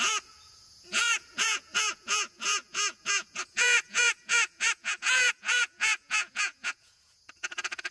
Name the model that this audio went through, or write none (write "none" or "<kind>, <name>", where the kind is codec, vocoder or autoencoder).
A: vocoder, Vocos